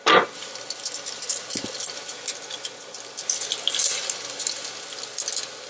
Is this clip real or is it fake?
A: real